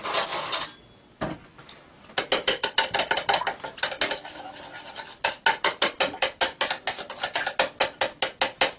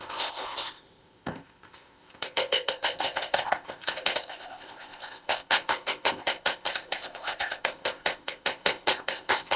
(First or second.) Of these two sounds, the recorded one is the first